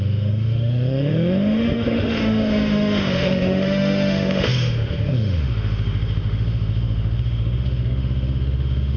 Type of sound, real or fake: fake